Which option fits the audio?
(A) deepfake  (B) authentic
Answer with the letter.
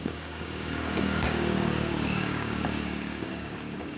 A